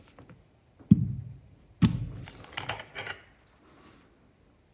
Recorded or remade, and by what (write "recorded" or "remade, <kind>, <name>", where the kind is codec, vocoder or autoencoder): recorded